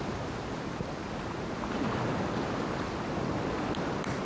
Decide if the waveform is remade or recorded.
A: recorded